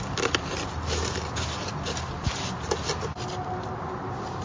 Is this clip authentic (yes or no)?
yes